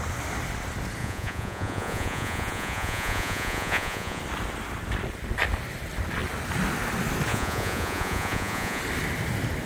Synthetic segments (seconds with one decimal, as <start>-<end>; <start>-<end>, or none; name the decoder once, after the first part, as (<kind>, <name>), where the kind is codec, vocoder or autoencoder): 1.0-4.2 (vocoder, Vocos); 7.3-8.8